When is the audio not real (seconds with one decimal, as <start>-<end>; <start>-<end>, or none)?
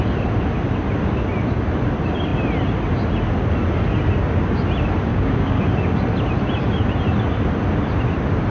5.1-5.6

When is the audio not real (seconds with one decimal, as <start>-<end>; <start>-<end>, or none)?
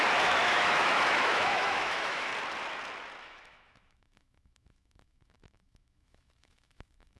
0.0-2.3; 3.2-7.2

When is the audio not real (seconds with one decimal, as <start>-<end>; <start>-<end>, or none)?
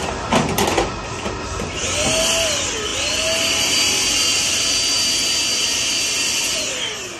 none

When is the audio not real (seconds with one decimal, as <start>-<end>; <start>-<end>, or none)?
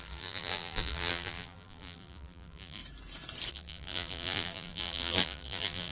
0.0-2.8; 3.5-5.9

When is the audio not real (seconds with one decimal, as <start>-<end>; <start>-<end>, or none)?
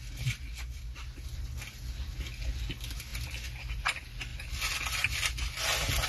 none